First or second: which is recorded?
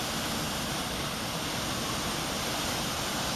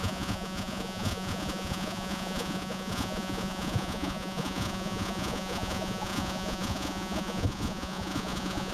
first